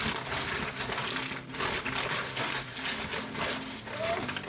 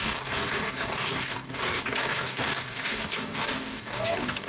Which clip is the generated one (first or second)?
second